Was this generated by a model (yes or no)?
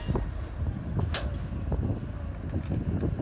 no